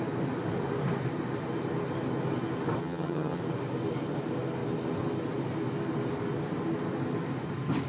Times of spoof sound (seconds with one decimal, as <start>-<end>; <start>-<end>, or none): 2.8-3.4